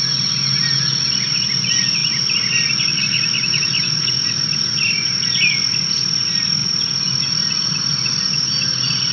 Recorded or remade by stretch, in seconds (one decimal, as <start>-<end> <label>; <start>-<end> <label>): 0.0-9.1 recorded